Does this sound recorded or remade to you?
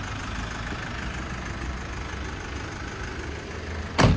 recorded